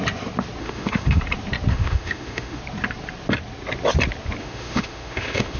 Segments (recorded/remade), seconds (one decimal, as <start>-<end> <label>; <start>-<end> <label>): 0.0-0.6 recorded; 0.6-1.2 remade; 1.2-1.7 recorded; 1.7-2.6 remade; 2.6-4.4 recorded; 4.4-5.6 remade